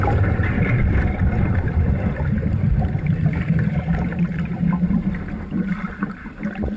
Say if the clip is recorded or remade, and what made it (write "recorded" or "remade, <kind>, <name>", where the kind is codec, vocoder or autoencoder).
recorded